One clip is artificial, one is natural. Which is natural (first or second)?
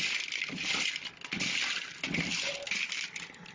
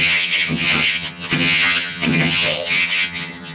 first